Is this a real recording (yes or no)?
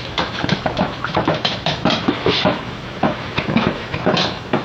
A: no